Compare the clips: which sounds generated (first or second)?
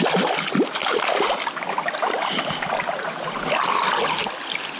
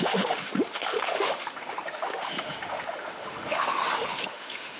second